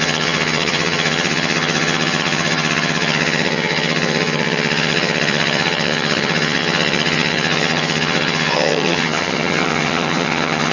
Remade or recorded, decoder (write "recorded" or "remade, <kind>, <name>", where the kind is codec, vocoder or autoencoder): remade, vocoder, HiFi-GAN